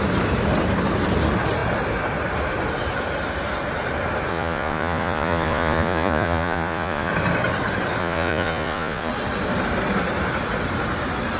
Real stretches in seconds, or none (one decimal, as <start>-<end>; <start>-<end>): 0.0-4.3; 7.1-8.0; 9.1-11.4